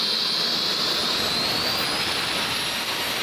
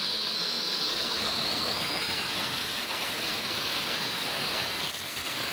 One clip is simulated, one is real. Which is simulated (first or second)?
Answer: second